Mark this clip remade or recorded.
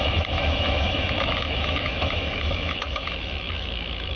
remade